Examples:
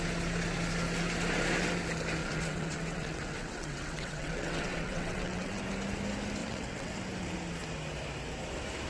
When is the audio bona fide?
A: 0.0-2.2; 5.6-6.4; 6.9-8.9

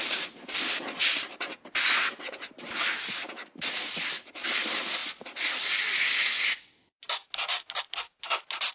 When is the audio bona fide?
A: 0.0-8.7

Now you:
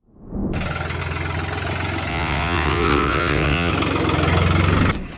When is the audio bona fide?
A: 0.0-2.1; 3.7-5.2